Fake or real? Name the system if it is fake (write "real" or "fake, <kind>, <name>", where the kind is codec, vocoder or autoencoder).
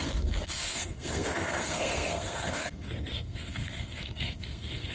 fake, codec, SNAC